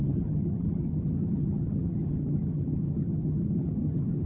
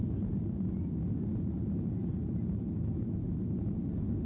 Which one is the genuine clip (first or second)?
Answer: second